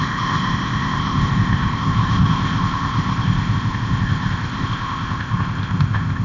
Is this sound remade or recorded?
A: remade